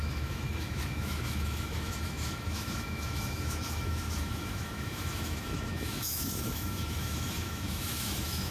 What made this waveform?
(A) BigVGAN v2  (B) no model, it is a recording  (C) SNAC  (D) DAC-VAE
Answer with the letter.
D